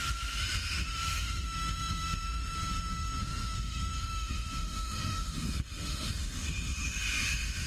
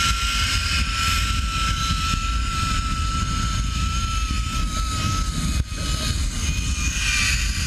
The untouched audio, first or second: second